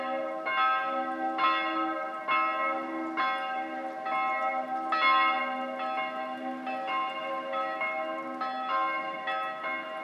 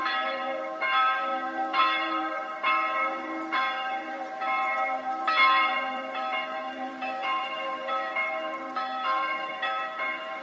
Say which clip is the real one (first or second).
first